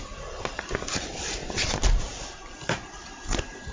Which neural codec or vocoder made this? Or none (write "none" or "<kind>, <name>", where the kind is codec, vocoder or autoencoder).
vocoder, BigVGAN v2